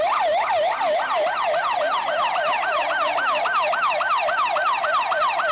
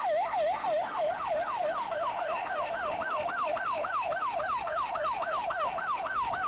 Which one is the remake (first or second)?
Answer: second